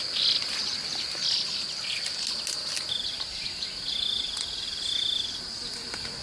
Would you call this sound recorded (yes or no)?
yes